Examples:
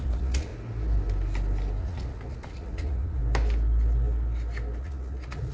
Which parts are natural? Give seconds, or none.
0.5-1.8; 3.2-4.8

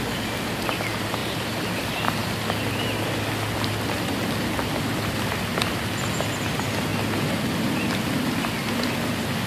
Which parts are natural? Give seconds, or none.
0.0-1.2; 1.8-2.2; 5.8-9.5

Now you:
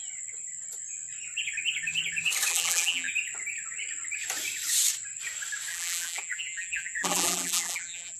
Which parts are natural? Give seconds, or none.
0.0-2.5; 3.1-5.7

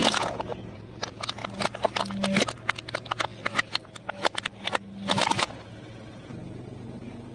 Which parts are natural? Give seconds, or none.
1.4-5.4

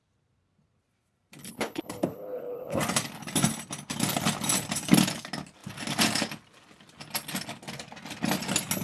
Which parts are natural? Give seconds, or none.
0.0-1.4; 2.8-8.8

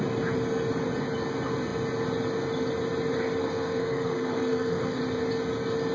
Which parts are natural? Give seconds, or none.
0.0-3.4; 5.0-5.9